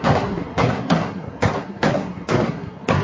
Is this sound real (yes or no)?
no